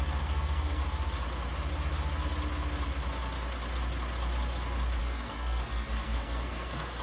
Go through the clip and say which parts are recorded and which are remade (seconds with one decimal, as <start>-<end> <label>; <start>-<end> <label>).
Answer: 0.0-0.8 remade; 0.8-5.0 recorded; 5.0-7.0 remade